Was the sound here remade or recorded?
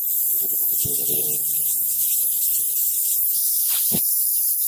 remade